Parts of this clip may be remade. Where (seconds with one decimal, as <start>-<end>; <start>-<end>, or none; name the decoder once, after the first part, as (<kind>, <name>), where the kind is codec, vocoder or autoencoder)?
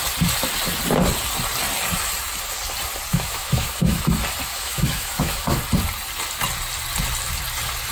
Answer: 3.1-4.0 (autoencoder, DAC-VAE); 4.5-5.6